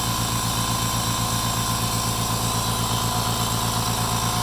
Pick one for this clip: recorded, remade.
recorded